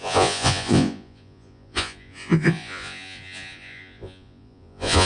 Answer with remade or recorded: remade